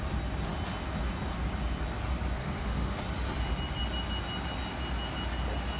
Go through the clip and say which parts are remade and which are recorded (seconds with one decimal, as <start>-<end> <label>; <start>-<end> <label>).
0.0-2.4 recorded; 2.4-3.0 remade; 3.0-5.8 recorded